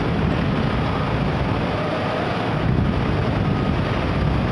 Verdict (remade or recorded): recorded